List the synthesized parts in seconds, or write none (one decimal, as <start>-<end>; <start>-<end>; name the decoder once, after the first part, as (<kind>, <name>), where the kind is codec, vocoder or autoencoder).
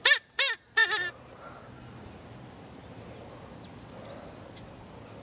0.8-1.5 (vocoder, BigVGAN v2)